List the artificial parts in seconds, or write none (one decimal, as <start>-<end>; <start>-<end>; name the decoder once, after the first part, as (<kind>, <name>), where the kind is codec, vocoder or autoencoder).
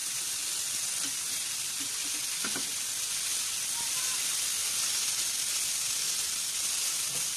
0.0-2.1 (vocoder, BigVGAN v2)